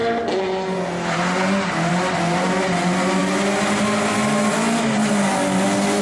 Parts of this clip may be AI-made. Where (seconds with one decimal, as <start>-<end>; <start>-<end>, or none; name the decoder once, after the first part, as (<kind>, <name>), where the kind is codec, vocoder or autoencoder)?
none